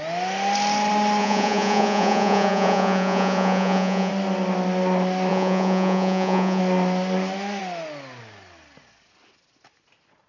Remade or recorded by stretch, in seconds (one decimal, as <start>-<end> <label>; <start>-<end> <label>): 0.0-1.2 recorded; 1.2-4.1 remade; 4.1-5.3 recorded; 5.3-6.6 remade; 6.6-10.3 recorded